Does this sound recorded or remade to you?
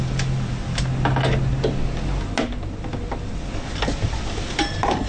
recorded